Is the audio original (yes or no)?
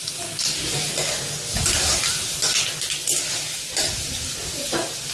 yes